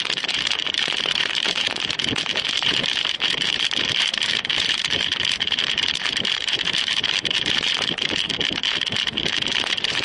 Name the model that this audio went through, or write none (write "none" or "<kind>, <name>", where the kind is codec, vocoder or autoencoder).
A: vocoder, BigVGAN v2